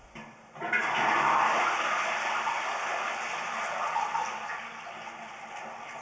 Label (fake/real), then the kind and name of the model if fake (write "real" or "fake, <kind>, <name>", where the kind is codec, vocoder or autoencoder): real